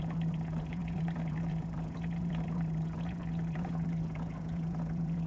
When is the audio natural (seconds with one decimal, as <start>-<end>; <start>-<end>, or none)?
none

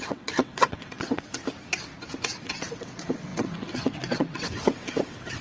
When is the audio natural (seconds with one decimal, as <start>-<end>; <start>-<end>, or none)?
1.4-2.2

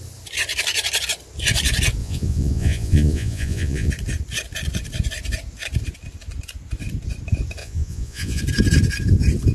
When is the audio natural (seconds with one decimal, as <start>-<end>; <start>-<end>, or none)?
0.0-2.0; 3.9-7.6; 8.4-9.5